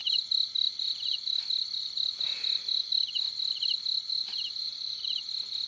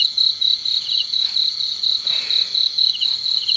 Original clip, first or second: first